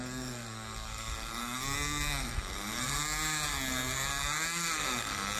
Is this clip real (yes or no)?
no